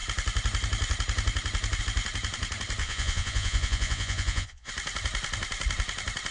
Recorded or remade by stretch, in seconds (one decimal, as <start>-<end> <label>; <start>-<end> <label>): 0.0-2.8 recorded; 2.8-4.7 remade; 4.7-6.3 recorded